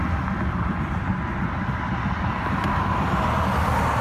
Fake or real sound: real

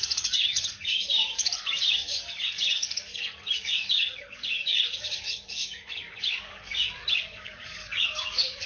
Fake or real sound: fake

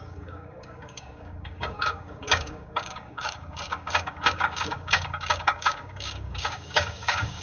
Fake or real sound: fake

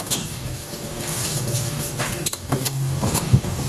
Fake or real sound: fake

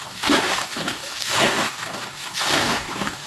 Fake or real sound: fake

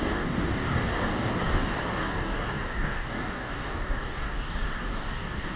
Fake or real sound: fake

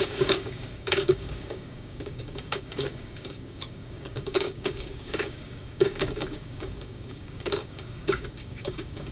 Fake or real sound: fake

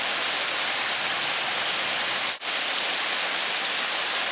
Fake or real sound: real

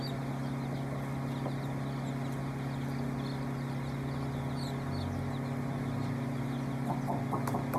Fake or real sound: real